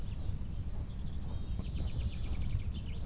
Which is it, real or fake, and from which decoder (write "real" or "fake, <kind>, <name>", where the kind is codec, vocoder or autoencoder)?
real